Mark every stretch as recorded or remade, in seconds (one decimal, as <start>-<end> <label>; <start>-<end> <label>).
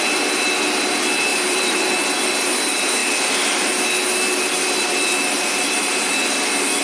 0.0-1.3 recorded; 1.3-1.8 remade; 1.8-6.8 recorded